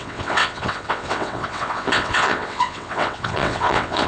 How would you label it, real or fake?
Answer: fake